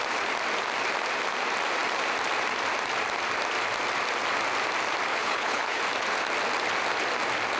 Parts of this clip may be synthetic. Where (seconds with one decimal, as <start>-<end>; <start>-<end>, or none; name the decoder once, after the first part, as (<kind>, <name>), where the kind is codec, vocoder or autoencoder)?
5.1-5.8 (codec, HILCodec)